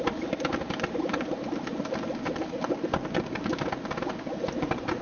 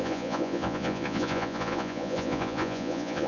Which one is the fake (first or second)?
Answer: second